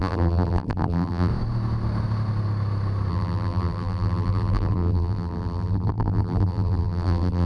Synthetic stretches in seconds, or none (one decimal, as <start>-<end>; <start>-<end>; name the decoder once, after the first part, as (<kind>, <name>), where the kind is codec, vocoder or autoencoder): 0.0-1.3 (vocoder, BigVGAN v2); 3.1-7.5